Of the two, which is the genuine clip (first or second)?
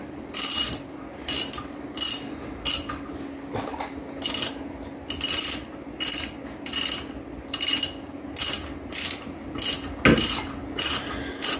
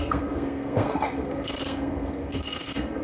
first